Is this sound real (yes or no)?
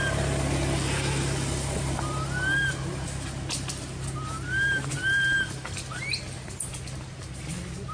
yes